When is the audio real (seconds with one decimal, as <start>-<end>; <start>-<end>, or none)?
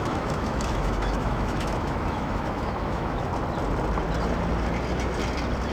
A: 3.3-5.7